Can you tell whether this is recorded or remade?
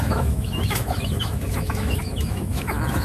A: remade